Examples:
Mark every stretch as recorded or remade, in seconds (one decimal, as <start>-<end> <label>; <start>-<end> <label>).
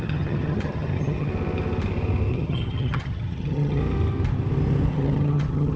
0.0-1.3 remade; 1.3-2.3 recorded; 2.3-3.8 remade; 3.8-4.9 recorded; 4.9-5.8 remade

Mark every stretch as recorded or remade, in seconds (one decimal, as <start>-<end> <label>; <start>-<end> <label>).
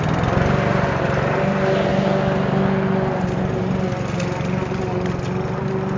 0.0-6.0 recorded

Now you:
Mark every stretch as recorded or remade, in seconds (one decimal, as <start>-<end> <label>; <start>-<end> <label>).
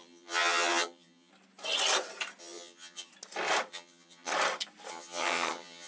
0.0-1.3 remade; 1.3-2.4 recorded; 2.4-3.1 remade; 3.1-3.7 recorded; 3.7-4.3 remade; 4.3-4.9 recorded; 4.9-5.9 remade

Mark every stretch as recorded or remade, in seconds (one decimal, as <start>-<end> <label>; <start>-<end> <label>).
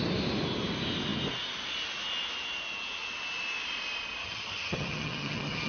0.0-4.2 recorded; 4.2-5.7 remade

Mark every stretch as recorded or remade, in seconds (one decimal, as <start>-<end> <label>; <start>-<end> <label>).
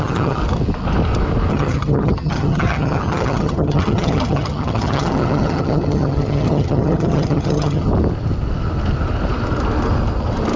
0.0-0.4 remade; 0.4-1.5 recorded; 1.5-7.9 remade; 7.9-10.6 recorded